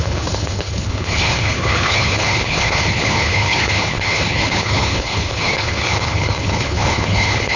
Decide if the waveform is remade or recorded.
remade